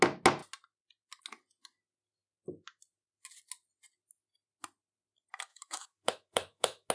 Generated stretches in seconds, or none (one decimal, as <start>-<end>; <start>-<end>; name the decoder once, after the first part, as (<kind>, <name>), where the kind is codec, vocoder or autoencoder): 5.5-6.9 (autoencoder, DAC-VAE)